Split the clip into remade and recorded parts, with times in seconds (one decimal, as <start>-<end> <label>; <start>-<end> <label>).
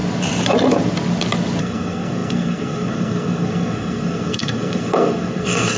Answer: 0.0-1.6 recorded; 1.6-5.8 remade